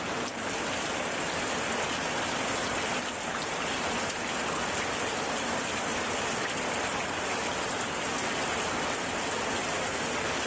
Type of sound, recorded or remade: recorded